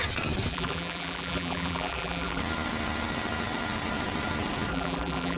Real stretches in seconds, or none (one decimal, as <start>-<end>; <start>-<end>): 0.0-0.5; 2.4-4.7